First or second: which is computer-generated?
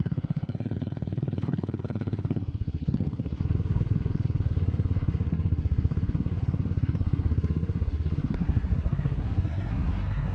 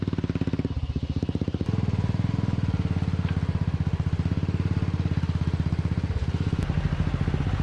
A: first